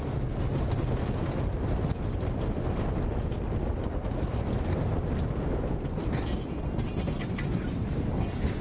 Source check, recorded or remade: recorded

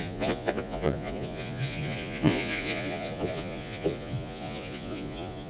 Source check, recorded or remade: remade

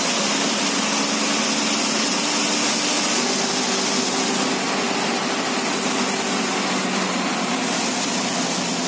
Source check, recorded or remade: recorded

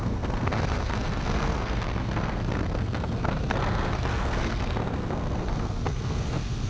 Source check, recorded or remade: remade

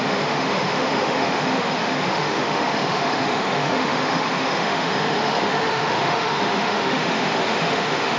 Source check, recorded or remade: remade